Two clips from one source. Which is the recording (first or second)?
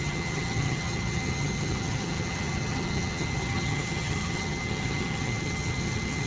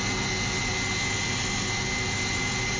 second